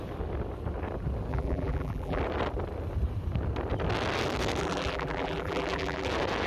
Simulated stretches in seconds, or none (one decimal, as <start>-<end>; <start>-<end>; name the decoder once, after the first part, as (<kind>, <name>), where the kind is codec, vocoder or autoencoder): 1.3-2.2 (vocoder, BigVGAN v2); 4.6-6.1